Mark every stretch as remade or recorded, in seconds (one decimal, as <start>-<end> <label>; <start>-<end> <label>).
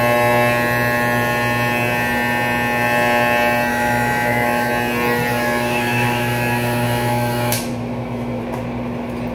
0.0-3.7 recorded; 3.7-4.7 remade; 4.7-5.3 recorded; 5.3-8.4 remade; 8.4-9.3 recorded